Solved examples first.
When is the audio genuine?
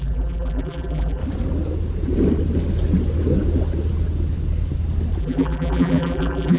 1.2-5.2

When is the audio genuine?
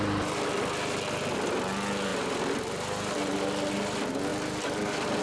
0.0-4.3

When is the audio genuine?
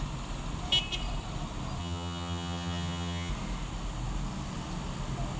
0.0-1.8; 3.3-5.4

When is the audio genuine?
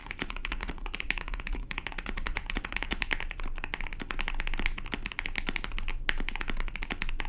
3.0-7.3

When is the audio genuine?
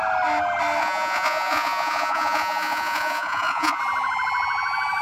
0.0-0.8; 3.8-5.0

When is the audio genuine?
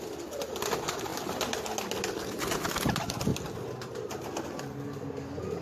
0.0-5.6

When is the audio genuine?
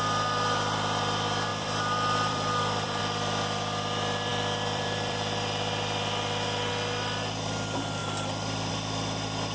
0.0-1.5; 3.0-4.3; 6.7-9.5